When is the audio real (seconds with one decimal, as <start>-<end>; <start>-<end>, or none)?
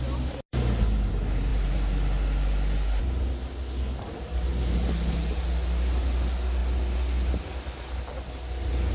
0.0-8.9